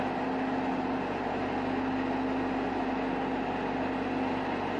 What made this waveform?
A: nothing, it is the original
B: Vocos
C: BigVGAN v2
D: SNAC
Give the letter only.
A